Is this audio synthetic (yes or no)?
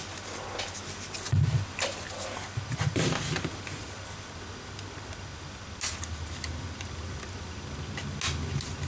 no